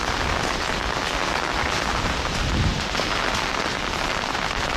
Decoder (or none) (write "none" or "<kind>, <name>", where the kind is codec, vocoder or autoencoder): none